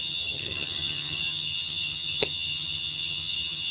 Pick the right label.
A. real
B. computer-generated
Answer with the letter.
B